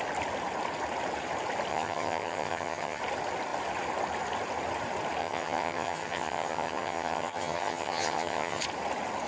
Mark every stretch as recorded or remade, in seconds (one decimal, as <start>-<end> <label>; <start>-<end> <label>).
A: 0.0-1.7 recorded; 1.7-3.0 remade; 3.0-5.2 recorded; 5.2-8.6 remade; 8.6-9.3 recorded